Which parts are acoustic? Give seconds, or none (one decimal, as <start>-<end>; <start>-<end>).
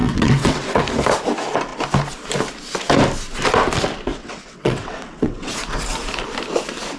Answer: 0.8-4.1; 5.5-7.0